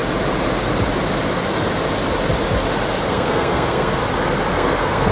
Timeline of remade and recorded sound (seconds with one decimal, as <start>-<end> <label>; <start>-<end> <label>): 0.0-3.1 recorded; 3.1-4.0 remade; 4.0-4.5 recorded; 4.5-5.1 remade